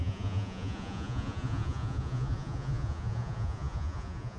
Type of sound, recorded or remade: remade